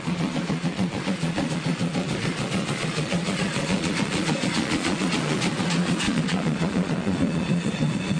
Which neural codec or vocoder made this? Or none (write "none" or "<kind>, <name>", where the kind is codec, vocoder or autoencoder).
vocoder, Vocos